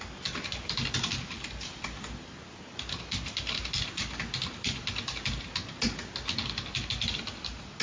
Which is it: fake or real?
real